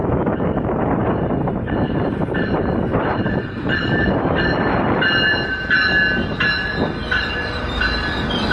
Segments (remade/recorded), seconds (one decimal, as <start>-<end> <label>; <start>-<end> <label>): 0.0-4.8 remade; 4.8-7.0 recorded; 7.0-7.8 remade; 7.8-8.5 recorded